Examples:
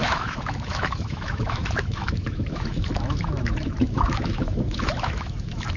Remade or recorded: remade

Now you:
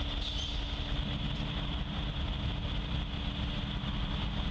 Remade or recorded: recorded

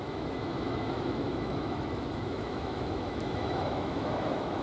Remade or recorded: remade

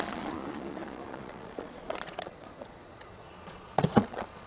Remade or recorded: remade